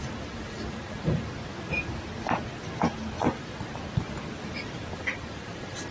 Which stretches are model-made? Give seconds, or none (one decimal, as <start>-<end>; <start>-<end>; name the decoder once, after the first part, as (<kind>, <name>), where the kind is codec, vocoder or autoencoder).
0.0-1.4 (vocoder, BigVGAN v2); 4.9-5.9